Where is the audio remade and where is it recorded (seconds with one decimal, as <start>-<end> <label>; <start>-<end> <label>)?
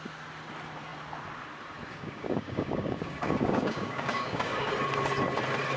0.0-1.9 recorded; 1.9-4.7 remade; 4.7-5.8 recorded